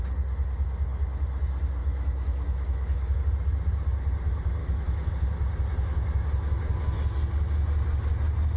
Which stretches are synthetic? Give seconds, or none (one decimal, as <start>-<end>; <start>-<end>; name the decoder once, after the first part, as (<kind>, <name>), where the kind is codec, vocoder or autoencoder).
1.8-3.2 (autoencoder, DAC-VAE); 4.6-5.1